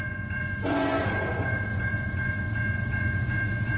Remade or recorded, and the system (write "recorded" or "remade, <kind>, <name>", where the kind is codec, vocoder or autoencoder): remade, vocoder, Vocos